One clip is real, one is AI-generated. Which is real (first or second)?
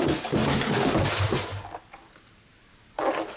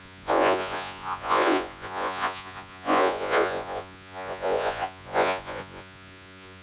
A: first